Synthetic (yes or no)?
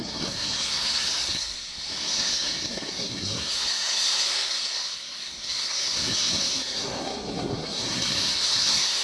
yes